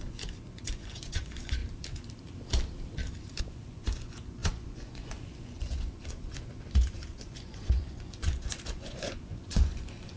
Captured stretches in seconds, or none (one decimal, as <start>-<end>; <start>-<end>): 1.6-3.4